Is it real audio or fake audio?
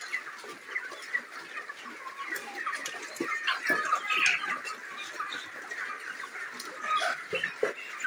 real